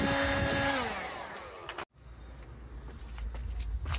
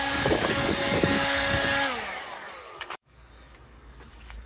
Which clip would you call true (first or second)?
first